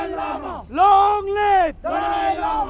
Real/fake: real